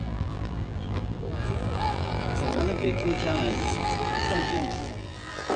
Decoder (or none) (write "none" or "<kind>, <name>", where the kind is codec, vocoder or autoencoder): vocoder, BigVGAN v2